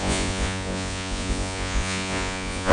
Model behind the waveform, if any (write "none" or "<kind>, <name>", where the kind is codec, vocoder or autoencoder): vocoder, Vocos